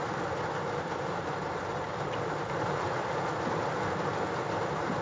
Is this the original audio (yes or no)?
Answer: yes